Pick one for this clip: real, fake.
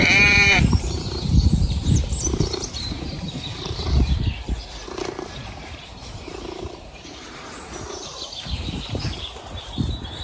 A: fake